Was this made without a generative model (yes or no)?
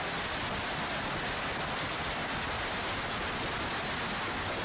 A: yes